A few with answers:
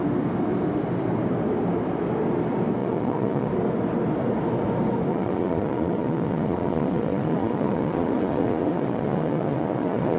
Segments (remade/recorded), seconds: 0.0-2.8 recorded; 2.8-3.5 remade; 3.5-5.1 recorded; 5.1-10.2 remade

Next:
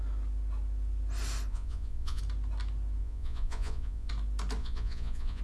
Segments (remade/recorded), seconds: 0.0-1.5 recorded; 1.5-2.2 remade; 2.2-3.0 recorded; 3.0-4.1 remade; 4.1-4.6 recorded; 4.6-5.4 remade

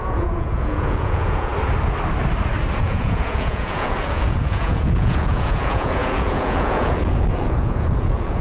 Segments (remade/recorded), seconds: 0.0-1.5 remade; 1.5-2.8 recorded; 2.8-8.4 remade

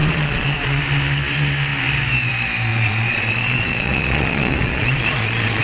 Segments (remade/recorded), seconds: 0.0-0.8 remade; 0.8-2.7 recorded; 2.7-5.6 remade

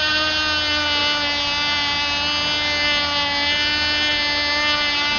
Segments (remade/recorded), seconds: 0.0-5.2 recorded

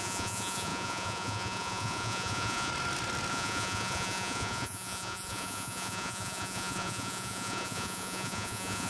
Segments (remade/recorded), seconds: 0.0-2.7 remade; 2.7-3.3 recorded; 3.3-8.9 remade

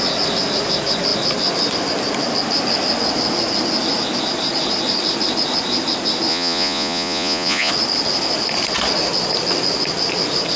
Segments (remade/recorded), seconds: 0.0-6.3 recorded; 6.3-7.7 remade; 7.7-10.6 recorded